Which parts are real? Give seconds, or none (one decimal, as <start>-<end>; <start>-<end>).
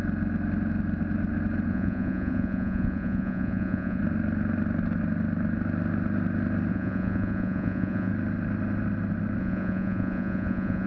0.0-1.7; 4.0-6.7; 8.1-9.4